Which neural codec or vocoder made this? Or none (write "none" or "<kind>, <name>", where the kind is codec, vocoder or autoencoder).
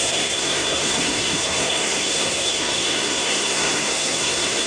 codec, SNAC